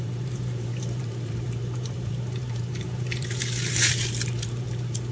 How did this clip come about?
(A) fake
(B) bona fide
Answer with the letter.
A